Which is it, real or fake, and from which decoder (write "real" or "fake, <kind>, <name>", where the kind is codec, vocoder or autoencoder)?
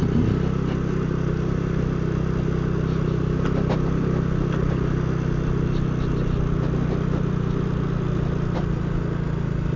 real